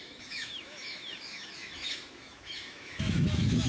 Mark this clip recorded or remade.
remade